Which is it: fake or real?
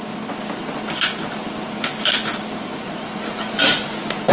real